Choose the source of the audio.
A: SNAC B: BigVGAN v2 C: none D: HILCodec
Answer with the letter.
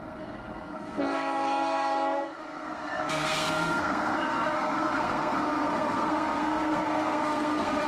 A